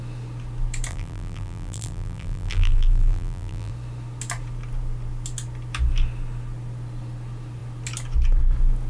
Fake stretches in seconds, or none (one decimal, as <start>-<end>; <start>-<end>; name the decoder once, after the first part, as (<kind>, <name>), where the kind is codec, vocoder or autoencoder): 0.9-3.7 (vocoder, BigVGAN v2)

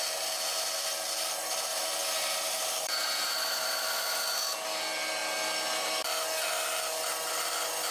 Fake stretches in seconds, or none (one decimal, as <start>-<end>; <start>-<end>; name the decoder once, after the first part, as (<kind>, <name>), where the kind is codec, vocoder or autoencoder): 1.7-4.2 (vocoder, BigVGAN v2)

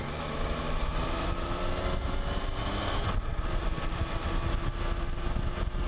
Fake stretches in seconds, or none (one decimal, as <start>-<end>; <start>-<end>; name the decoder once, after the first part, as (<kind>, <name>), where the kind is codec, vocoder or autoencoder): 0.9-3.9 (vocoder, BigVGAN v2)

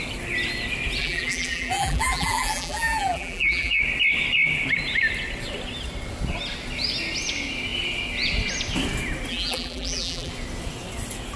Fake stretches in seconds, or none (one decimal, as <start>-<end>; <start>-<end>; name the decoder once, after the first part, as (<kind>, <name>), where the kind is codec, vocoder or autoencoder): 1.0-3.8 (vocoder, BigVGAN v2); 9.3-10.3